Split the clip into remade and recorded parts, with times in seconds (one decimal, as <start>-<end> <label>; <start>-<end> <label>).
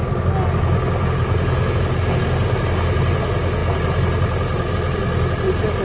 0.0-5.8 recorded